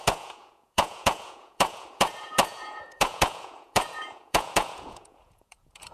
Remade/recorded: remade